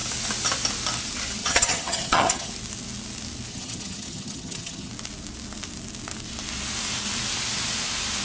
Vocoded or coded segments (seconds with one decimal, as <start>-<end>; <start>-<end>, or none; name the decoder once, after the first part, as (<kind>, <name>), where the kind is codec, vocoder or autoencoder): 1.4-2.5 (vocoder, HiFi-GAN); 3.5-4.9